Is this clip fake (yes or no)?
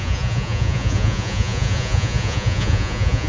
yes